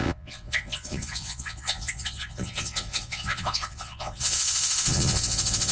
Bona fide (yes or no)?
no